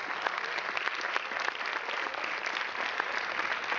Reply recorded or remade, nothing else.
recorded